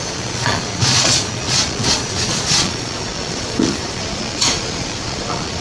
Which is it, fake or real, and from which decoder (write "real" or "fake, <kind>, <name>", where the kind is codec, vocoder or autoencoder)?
fake, vocoder, Vocos